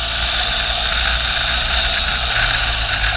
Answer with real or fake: real